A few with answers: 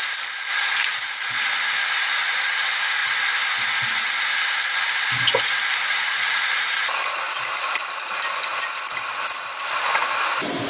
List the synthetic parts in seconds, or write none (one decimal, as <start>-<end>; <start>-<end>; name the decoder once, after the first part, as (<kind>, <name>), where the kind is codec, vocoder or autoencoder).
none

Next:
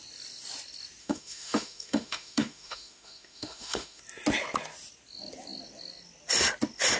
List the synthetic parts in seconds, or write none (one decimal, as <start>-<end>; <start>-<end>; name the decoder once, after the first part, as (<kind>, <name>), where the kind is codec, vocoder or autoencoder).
1.0-4.0 (autoencoder, DAC-VAE)

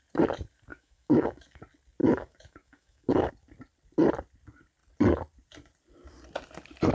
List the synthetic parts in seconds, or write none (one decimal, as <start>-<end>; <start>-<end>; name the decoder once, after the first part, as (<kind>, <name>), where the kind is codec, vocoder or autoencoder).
0.7-1.6 (autoencoder, DAC-VAE); 2.0-3.3